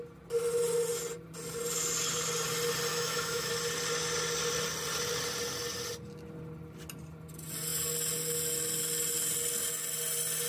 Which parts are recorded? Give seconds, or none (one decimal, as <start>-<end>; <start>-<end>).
0.0-2.9; 3.5-10.5